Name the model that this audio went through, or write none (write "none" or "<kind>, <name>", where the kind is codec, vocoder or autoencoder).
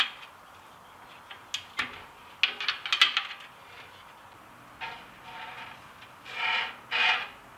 none